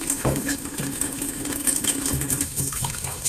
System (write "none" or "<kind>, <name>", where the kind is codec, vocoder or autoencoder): autoencoder, DAC-VAE